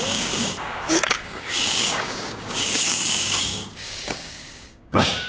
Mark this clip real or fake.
fake